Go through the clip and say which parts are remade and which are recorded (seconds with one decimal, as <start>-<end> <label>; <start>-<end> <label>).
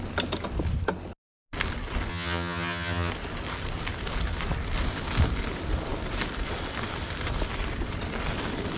0.0-2.1 recorded; 2.1-3.1 remade; 3.1-8.8 recorded